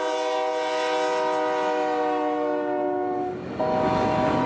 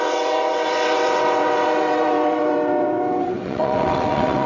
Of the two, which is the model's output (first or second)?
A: second